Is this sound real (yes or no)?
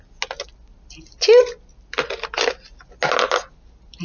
yes